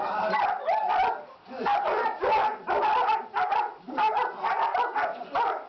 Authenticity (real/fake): real